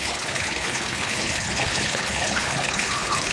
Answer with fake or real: fake